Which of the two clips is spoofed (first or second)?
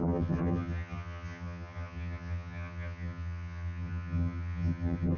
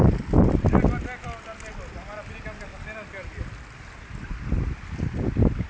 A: first